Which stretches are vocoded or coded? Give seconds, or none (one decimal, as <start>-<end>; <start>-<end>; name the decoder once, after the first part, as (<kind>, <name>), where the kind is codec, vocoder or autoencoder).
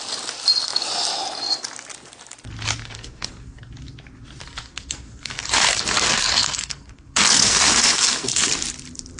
2.8-3.7 (codec, SNAC); 4.4-8.5